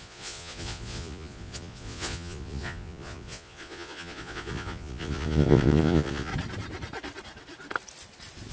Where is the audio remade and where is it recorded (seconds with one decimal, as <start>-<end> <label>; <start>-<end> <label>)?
0.0-6.3 remade; 6.3-8.5 recorded